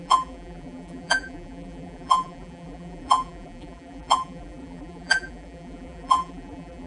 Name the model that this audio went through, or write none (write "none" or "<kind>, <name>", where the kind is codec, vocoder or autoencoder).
vocoder, BigVGAN v2